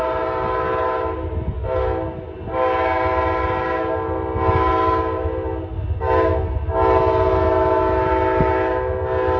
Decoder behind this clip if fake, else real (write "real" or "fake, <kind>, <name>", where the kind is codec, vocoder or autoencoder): real